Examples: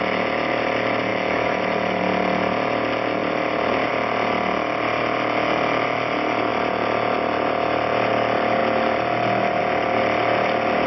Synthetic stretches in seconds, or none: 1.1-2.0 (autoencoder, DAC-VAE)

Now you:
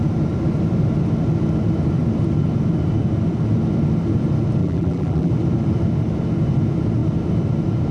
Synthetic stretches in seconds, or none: 4.6-5.3 (vocoder, BigVGAN v2)

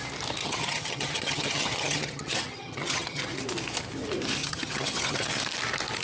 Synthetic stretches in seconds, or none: 0.4-3.2 (vocoder, HiFi-GAN); 4.4-5.3

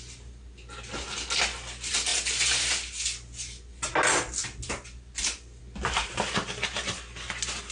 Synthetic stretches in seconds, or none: none

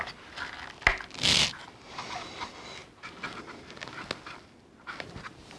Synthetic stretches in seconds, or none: none

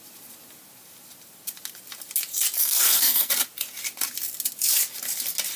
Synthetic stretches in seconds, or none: 2.6-3.3 (codec, SNAC)

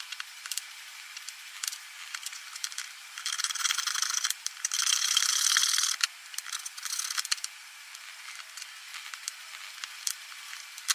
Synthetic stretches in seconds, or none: 0.0-8.9 (vocoder, BigVGAN v2); 10.0-10.9

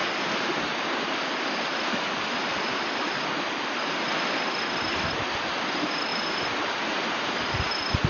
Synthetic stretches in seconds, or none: none